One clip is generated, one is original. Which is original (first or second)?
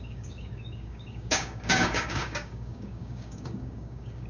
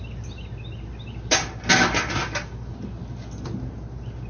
second